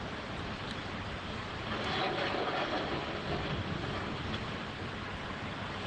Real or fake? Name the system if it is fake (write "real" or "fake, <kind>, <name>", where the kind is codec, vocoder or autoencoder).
fake, vocoder, BigVGAN v2